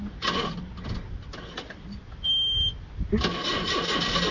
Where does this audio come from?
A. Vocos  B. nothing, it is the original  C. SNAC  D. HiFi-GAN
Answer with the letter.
B